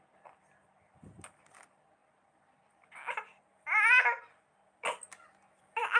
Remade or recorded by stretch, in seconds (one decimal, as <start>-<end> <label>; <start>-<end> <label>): 0.0-6.0 recorded